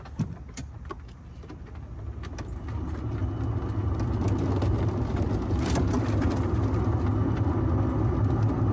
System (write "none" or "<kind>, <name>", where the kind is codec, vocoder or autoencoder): none